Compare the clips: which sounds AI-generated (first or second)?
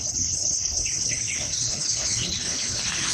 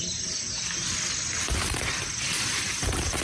first